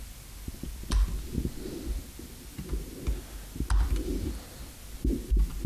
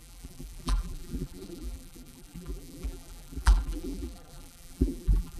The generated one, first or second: second